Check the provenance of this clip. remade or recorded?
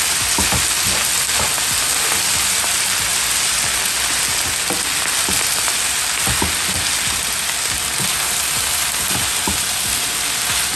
recorded